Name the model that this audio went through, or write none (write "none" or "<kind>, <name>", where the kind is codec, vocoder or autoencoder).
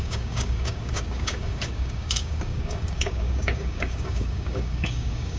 codec, DAC